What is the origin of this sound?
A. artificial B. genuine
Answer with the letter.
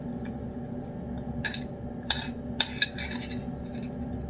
B